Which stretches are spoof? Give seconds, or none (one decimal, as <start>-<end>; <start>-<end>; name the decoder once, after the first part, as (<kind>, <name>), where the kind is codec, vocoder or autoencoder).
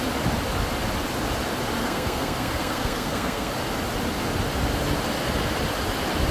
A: 1.8-3.5 (codec, SNAC)